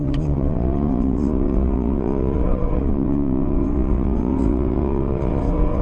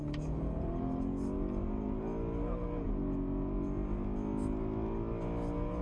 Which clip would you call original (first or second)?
second